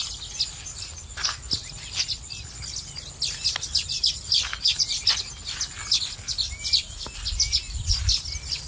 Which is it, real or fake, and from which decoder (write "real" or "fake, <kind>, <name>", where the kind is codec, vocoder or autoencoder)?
real